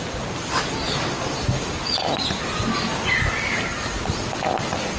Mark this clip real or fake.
real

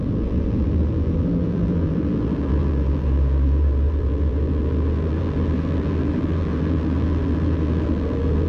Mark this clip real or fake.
fake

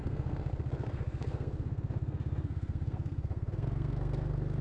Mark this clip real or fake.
fake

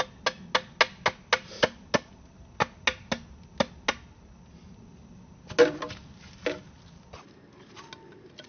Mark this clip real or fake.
real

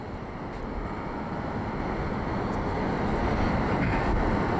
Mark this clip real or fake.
real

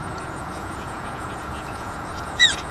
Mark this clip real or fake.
fake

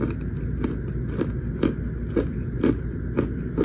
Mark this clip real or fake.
real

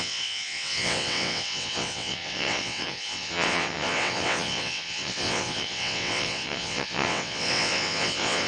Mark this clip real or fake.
fake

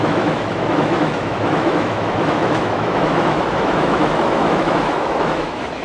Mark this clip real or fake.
fake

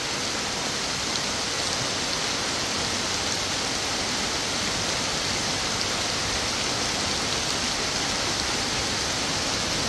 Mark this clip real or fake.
real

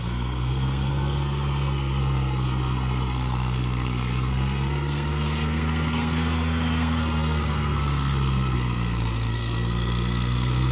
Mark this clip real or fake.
fake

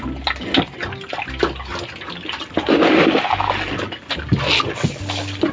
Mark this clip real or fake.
real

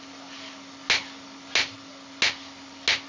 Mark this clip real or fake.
real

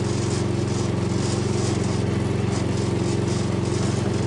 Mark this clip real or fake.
real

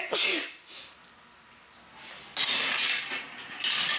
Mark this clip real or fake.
real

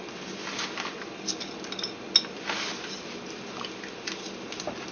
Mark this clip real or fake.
real